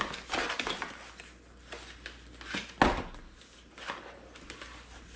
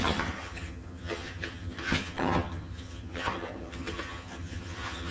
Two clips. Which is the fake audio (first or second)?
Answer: second